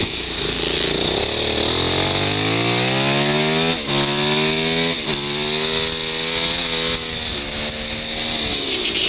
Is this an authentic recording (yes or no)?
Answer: yes